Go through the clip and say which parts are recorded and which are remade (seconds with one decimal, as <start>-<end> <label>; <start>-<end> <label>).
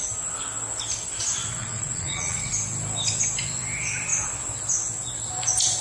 0.0-1.6 recorded; 1.6-2.5 remade; 2.5-5.8 recorded